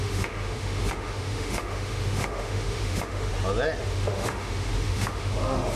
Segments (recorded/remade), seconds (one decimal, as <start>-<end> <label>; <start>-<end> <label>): 0.0-3.3 remade; 3.3-3.8 recorded; 3.8-5.8 remade